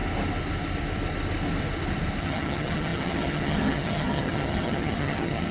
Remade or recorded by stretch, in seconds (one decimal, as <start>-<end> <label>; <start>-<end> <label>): 0.0-2.2 recorded; 2.2-5.5 remade